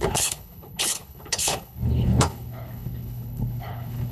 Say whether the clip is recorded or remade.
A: remade